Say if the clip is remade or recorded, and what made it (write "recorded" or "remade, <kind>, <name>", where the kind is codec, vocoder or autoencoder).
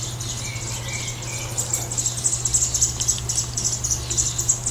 recorded